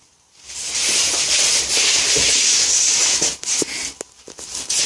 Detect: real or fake real